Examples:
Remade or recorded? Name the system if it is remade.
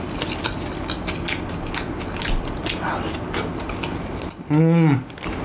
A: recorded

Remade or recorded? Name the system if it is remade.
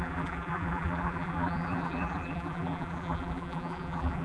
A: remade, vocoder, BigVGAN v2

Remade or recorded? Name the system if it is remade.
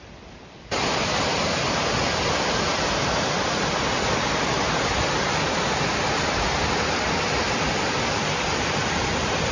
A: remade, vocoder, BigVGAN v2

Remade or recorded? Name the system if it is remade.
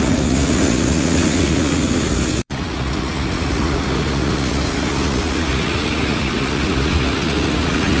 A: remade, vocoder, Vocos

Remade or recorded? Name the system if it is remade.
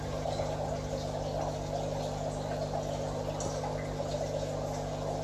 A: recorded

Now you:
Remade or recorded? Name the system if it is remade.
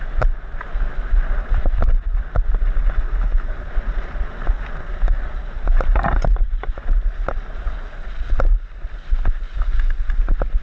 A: recorded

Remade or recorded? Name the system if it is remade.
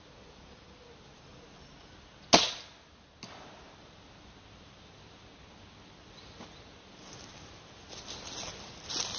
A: recorded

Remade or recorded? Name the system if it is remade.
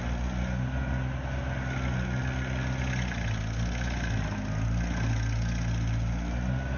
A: recorded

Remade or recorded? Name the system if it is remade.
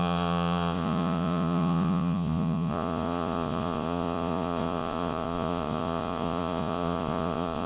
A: remade, vocoder, Vocos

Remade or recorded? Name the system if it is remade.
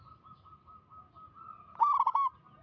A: recorded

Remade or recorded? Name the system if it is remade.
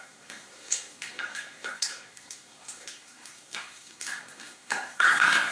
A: remade, codec, SNAC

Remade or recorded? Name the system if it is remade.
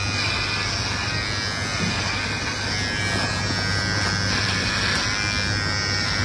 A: recorded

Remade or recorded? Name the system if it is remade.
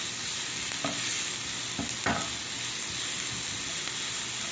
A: recorded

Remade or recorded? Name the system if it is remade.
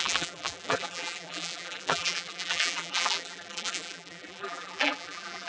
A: remade, vocoder, BigVGAN v2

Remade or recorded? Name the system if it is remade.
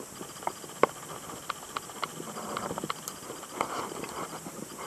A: recorded